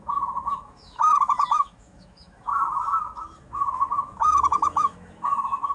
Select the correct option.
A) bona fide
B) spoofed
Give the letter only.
B